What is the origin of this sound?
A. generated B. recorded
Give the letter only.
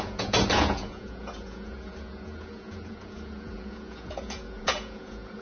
A